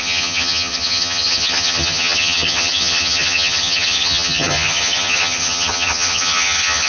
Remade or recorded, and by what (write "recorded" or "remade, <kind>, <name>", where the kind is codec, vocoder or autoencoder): remade, vocoder, HiFi-GAN